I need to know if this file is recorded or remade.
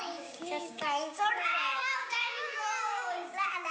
remade